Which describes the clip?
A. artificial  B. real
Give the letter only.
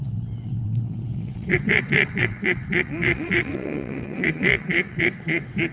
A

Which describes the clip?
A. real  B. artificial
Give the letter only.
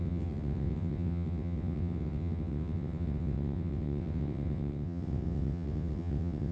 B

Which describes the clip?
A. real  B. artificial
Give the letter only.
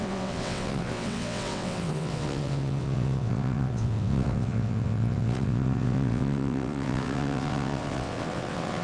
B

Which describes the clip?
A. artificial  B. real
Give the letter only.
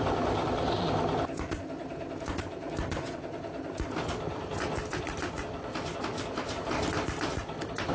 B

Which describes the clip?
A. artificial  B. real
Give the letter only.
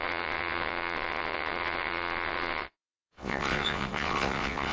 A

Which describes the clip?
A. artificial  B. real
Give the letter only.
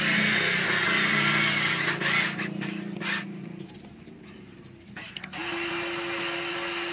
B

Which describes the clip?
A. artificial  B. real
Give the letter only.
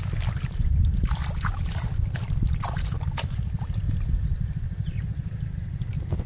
B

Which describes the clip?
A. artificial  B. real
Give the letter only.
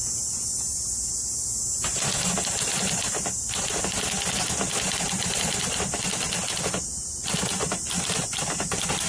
B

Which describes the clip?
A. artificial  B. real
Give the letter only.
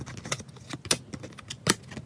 B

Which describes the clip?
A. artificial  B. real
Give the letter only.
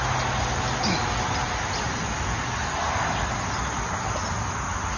B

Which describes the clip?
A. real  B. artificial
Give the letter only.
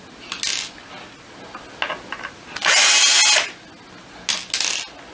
A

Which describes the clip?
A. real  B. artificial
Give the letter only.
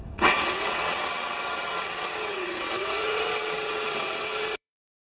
B